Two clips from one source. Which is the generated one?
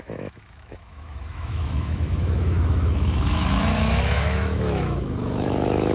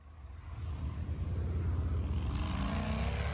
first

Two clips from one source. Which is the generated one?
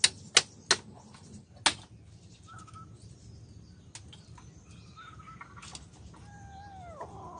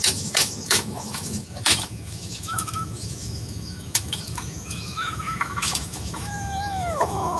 second